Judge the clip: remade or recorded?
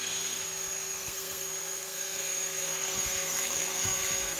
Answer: remade